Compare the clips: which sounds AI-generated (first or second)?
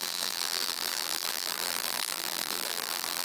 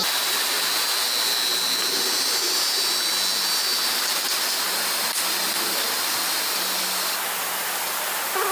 first